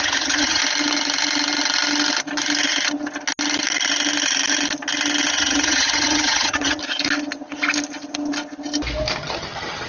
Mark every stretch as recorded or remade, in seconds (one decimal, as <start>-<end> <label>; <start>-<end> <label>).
0.0-0.6 remade; 0.6-5.3 recorded; 5.3-6.8 remade; 6.8-9.2 recorded; 9.2-9.9 remade